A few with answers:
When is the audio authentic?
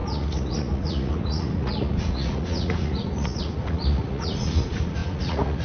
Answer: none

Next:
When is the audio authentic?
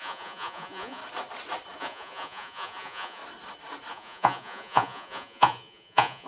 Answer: 1.0-1.8; 3.2-3.9